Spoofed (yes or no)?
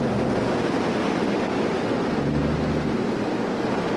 no